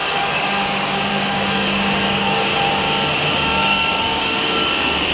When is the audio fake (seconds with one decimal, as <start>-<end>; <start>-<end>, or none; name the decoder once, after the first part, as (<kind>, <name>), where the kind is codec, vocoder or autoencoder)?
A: 0.0-2.5 (codec, DAC); 3.3-5.1